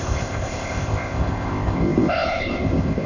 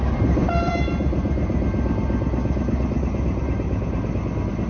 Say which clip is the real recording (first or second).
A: second